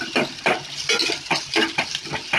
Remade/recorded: recorded